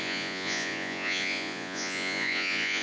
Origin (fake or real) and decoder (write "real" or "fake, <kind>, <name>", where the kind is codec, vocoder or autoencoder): fake, vocoder, Vocos